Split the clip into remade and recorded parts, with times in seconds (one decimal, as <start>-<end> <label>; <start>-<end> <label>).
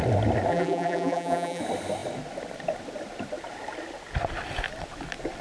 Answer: 0.0-0.5 recorded; 0.5-1.6 remade; 1.6-5.4 recorded